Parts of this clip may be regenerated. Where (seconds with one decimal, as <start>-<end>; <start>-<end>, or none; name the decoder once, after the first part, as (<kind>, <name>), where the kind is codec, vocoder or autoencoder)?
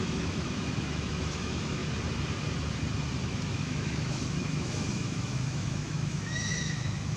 0.0-1.8 (autoencoder, DAC-VAE); 3.2-7.2